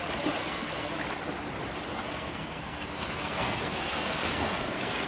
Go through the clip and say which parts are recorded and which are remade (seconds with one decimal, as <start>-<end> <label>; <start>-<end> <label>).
0.0-0.4 recorded; 0.4-0.9 remade; 0.9-1.9 recorded; 1.9-5.1 remade

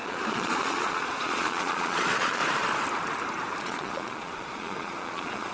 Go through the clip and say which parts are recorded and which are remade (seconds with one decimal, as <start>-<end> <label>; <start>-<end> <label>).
0.0-2.4 remade; 2.4-3.6 recorded; 3.6-5.5 remade

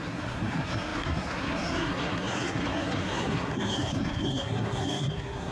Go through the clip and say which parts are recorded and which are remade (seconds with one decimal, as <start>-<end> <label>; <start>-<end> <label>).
0.0-5.5 remade